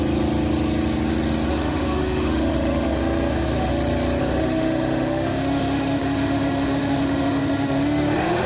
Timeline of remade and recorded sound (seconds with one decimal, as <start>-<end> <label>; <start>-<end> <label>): 0.0-1.5 recorded; 1.5-3.7 remade; 3.7-4.2 recorded; 4.2-8.5 remade